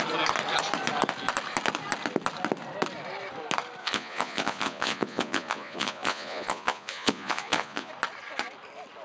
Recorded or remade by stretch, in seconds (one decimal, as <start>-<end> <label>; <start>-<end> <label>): 0.0-3.8 recorded; 3.8-7.9 remade; 7.9-9.0 recorded